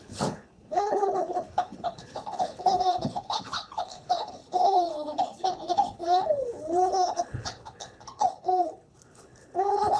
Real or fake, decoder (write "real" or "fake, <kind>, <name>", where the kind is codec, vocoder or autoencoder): fake, codec, HILCodec